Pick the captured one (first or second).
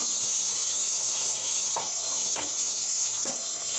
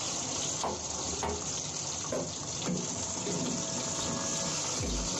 second